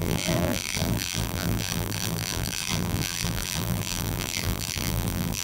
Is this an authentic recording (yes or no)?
no